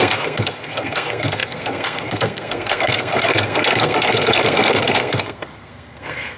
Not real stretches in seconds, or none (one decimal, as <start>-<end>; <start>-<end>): 0.0-6.4